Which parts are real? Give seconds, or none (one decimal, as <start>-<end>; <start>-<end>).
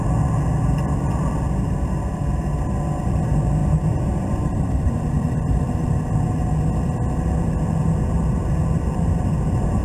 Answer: 0.0-3.6; 5.8-9.8